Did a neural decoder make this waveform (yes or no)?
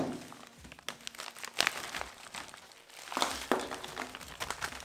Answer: no